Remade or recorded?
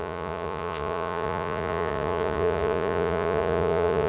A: remade